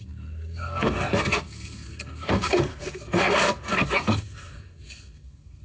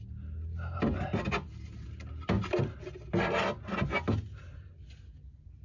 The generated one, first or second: first